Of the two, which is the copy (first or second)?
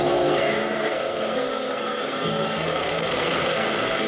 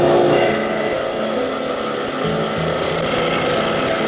first